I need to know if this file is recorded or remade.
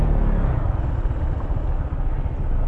recorded